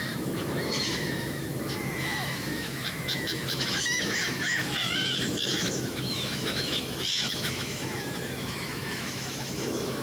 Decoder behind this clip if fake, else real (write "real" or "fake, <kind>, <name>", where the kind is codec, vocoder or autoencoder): fake, autoencoder, DAC-VAE